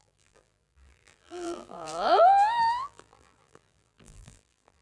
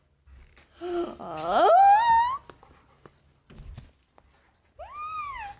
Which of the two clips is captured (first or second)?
second